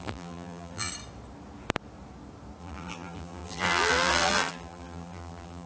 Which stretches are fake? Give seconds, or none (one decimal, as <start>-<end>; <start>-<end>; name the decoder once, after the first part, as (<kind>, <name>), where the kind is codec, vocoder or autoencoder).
0.0-0.9 (vocoder, BigVGAN v2); 2.6-5.7